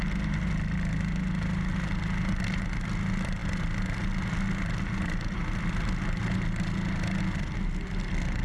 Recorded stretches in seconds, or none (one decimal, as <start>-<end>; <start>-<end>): 0.0-8.4